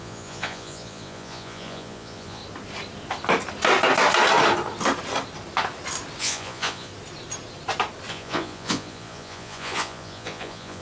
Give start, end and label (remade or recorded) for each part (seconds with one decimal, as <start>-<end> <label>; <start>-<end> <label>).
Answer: 0.0-2.4 remade; 2.4-6.2 recorded; 6.2-6.9 remade; 6.9-8.1 recorded; 8.1-10.8 remade